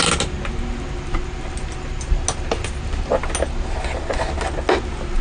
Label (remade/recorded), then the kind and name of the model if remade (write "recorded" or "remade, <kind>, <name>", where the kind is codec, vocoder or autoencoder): recorded